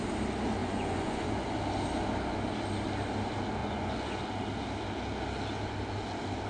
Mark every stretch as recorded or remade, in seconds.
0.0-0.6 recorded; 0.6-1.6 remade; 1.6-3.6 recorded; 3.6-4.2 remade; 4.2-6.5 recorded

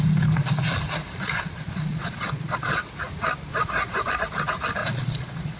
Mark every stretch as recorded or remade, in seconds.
0.0-1.9 recorded; 1.9-2.8 remade; 2.8-3.5 recorded; 3.5-4.1 remade; 4.1-4.8 recorded; 4.8-5.6 remade

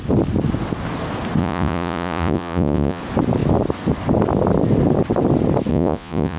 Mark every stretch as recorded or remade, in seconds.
0.0-1.4 recorded; 1.4-3.0 remade; 3.0-5.7 recorded; 5.7-6.4 remade

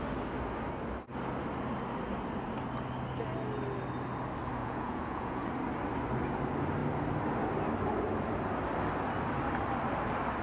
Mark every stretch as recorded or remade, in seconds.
0.0-4.6 recorded; 4.6-5.5 remade; 5.5-10.4 recorded